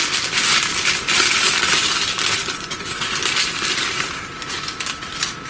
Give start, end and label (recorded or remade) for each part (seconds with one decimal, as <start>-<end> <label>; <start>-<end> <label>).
0.0-5.5 recorded